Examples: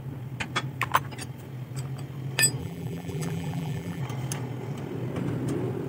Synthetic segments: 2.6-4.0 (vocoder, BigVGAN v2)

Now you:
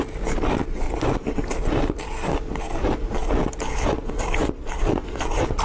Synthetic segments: none

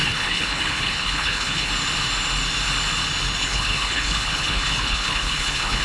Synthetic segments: 0.0-1.7 (codec, HILCodec); 3.4-5.8